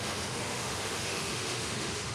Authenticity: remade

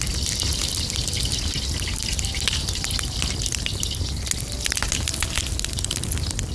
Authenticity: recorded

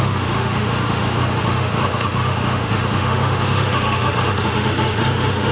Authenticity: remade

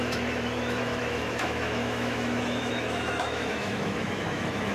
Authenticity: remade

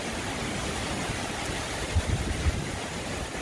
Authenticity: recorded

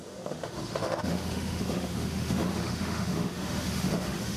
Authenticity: remade